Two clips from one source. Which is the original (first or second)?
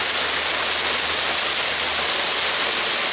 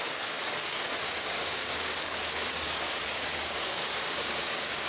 first